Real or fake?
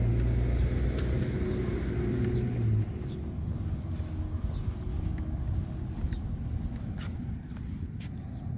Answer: real